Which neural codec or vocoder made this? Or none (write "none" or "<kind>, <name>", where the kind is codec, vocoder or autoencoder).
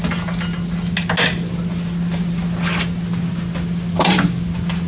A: none